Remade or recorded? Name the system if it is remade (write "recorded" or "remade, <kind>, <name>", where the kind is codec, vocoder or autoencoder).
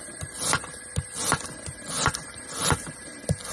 recorded